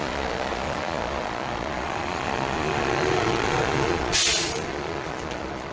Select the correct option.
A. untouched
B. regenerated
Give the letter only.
B